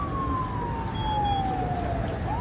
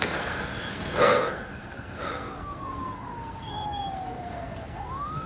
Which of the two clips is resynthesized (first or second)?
second